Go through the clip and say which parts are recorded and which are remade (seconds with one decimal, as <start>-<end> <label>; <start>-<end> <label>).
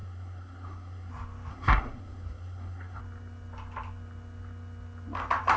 0.0-1.1 remade; 1.1-1.5 recorded; 1.5-3.0 remade; 3.0-5.6 recorded